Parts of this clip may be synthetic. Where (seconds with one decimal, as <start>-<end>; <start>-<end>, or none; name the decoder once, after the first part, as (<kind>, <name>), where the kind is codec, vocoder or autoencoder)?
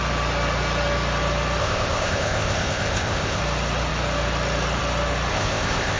1.6-3.4 (codec, ZipCodec); 5.3-6.0